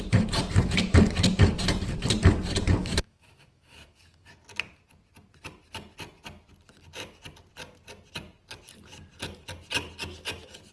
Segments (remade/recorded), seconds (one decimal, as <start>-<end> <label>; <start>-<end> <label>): 0.0-2.8 recorded; 2.8-4.3 remade; 4.3-10.7 recorded